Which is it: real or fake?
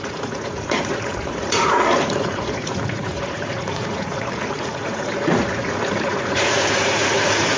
fake